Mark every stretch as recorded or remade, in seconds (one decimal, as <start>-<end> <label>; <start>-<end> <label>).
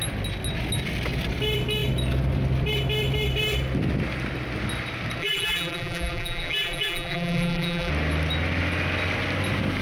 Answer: 0.0-5.2 recorded; 5.2-7.9 remade; 7.9-9.8 recorded